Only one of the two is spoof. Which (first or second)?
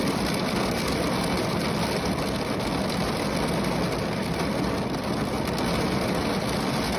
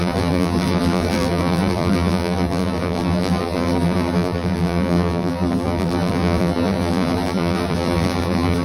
second